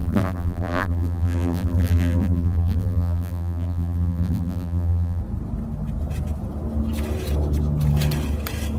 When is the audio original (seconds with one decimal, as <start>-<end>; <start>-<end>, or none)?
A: 5.2-8.8